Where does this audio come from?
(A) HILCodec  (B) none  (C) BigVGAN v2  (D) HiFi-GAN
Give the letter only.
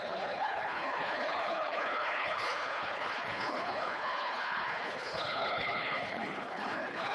A